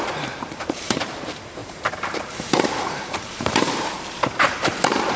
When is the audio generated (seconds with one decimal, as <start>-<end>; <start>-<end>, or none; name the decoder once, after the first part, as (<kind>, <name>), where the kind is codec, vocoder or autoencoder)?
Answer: 0.0-5.2 (vocoder, BigVGAN v2)